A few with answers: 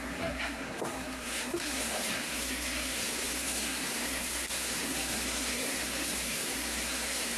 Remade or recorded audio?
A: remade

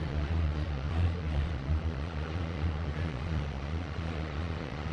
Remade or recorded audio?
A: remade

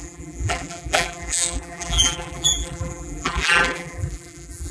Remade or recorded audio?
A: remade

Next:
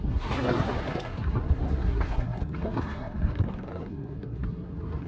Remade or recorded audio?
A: remade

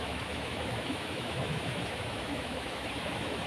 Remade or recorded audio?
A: remade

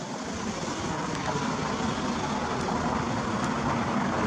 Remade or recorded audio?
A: recorded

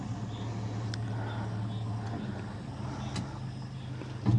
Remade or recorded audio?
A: recorded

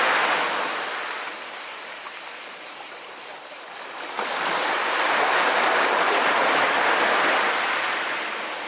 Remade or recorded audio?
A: recorded